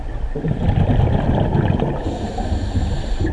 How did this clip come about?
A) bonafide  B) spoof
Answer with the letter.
A